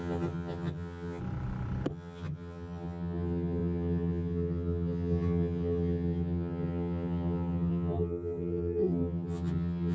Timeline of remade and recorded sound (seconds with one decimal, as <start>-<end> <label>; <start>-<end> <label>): 0.0-1.2 remade; 1.2-1.9 recorded; 1.9-9.9 remade